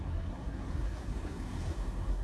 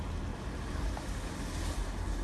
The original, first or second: second